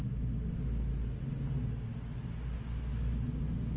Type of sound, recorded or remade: recorded